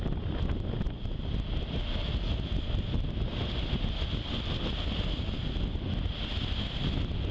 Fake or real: real